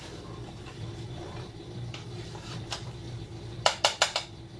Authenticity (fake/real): fake